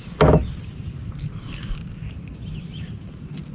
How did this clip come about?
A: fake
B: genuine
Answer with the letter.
B